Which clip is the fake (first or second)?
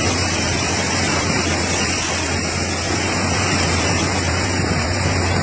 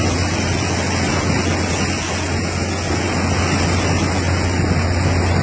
first